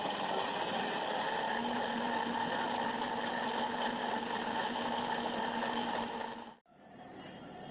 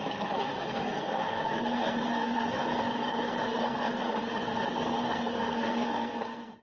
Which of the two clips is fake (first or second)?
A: second